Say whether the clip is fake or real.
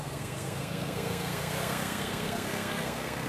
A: fake